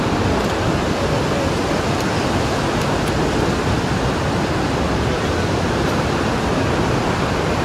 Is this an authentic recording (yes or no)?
yes